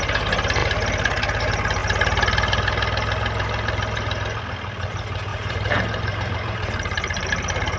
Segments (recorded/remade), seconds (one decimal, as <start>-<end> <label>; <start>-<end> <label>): 0.0-5.3 recorded; 5.3-7.3 remade; 7.3-7.8 recorded

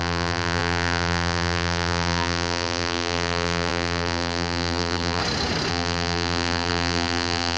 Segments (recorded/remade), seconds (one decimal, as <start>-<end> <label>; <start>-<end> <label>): 0.0-5.2 remade; 5.2-5.7 recorded; 5.7-7.6 remade

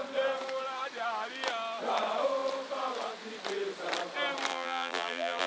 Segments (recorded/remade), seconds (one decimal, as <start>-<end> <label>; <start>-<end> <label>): 0.0-4.5 recorded; 4.5-5.5 remade